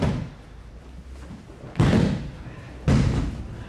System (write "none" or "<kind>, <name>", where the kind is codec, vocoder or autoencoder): none